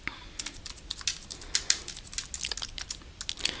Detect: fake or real real